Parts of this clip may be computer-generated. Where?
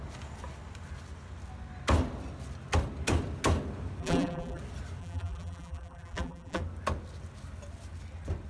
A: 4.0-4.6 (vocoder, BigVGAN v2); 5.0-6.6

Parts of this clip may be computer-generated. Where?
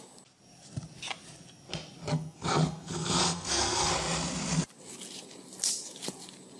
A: 2.1-3.9 (codec, SNAC)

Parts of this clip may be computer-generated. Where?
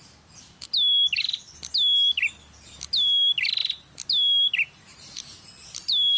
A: none